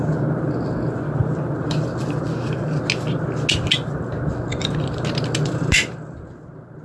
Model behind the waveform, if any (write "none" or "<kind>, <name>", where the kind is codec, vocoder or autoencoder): none